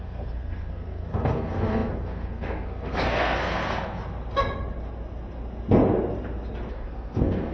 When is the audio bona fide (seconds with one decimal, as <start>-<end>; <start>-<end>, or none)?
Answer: 4.0-6.7